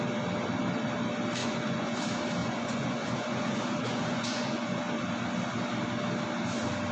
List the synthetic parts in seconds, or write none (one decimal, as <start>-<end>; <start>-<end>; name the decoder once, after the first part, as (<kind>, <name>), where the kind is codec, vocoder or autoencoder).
1.4-2.0 (vocoder, Vocos); 2.4-4.8